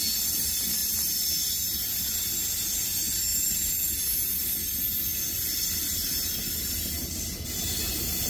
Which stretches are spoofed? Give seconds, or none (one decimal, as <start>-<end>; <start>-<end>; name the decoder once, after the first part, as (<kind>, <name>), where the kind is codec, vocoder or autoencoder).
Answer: 3.3-3.9 (vocoder, BigVGAN v2); 5.1-6.4